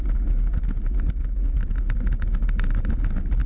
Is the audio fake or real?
real